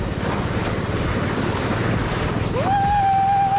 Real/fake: real